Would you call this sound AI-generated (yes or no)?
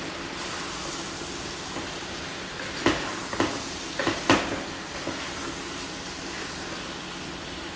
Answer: no